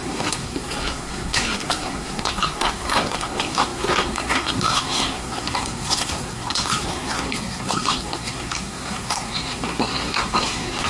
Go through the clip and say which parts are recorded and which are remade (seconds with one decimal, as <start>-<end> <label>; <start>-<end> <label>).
0.0-10.9 remade